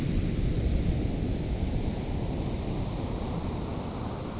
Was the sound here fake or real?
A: real